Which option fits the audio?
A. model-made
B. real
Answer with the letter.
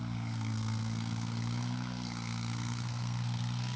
A